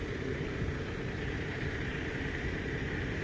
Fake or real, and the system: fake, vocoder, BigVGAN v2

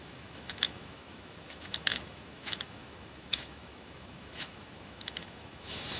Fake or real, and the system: fake, autoencoder, DAC-VAE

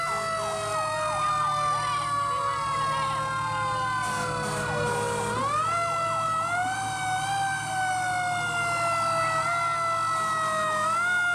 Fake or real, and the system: real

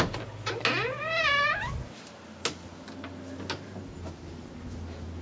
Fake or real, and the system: real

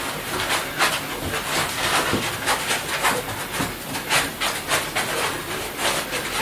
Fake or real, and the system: real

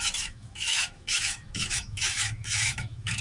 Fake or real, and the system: fake, autoencoder, DAC-VAE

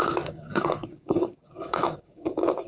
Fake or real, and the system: fake, codec, DAC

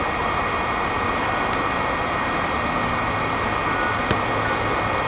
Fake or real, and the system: real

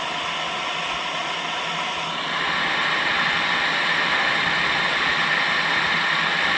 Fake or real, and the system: real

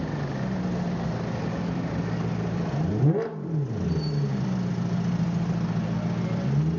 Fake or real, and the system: real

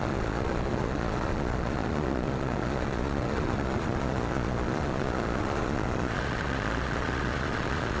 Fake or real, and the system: fake, vocoder, Vocos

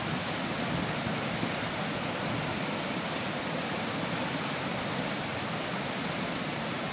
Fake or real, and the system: real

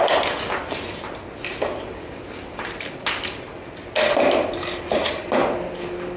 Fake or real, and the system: real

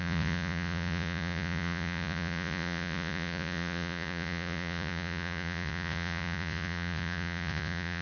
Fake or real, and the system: fake, vocoder, Vocos